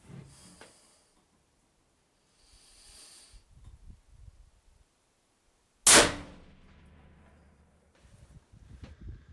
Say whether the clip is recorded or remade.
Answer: recorded